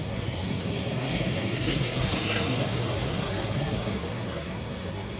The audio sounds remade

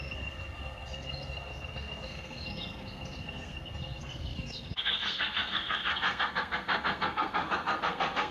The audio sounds remade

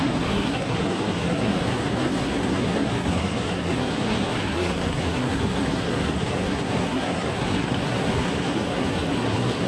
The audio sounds remade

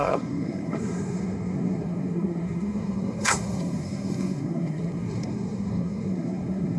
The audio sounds remade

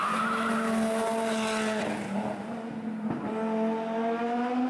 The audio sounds recorded